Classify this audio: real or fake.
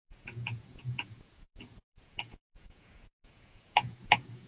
fake